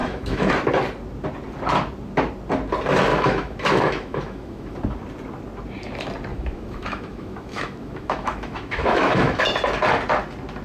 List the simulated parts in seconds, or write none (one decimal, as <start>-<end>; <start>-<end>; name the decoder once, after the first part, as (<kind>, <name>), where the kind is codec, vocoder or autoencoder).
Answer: 0.0-0.5 (autoencoder, DAC-VAE); 3.1-4.8; 6.3-9.4